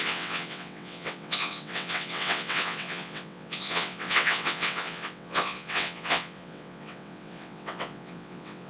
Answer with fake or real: fake